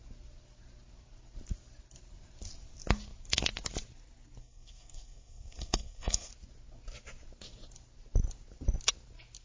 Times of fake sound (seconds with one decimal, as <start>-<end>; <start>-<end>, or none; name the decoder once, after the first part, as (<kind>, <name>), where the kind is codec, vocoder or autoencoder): 4.4-6.3 (codec, SNAC)